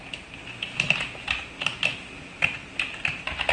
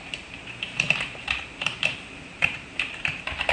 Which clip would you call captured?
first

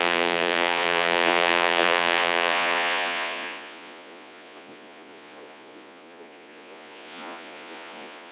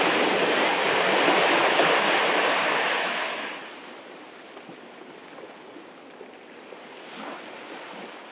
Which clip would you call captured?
second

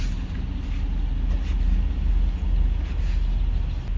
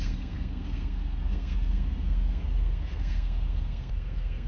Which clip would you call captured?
first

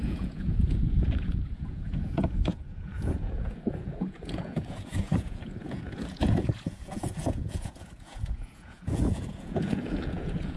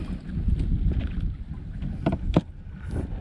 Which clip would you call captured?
second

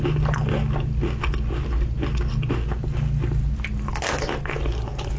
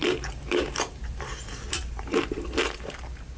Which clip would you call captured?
first